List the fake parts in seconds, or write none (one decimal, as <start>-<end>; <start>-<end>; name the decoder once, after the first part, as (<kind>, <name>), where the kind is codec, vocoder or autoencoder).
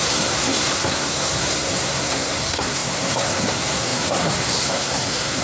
0.0-5.4 (codec, SNAC)